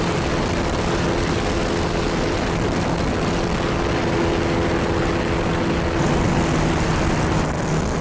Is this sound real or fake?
real